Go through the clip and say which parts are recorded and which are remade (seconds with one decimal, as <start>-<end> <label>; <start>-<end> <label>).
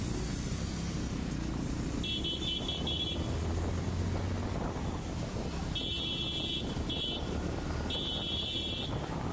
0.0-9.3 recorded